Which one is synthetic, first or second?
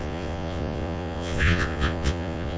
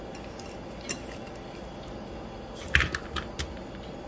first